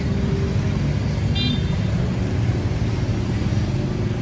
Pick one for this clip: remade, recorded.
recorded